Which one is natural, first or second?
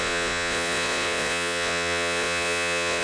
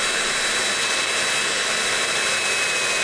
second